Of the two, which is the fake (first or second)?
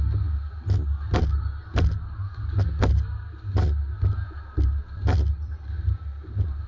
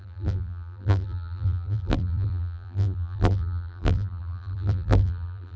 second